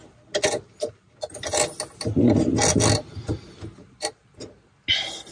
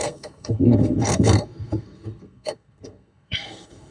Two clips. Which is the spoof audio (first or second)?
second